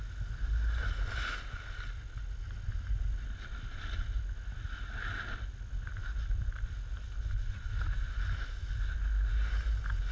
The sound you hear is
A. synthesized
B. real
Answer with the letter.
B